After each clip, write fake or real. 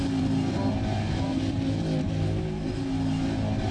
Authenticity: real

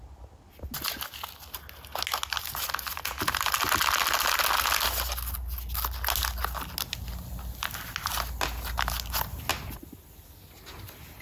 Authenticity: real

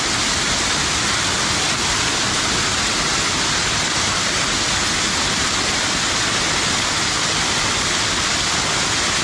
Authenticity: real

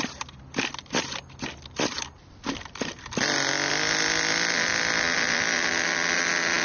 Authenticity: real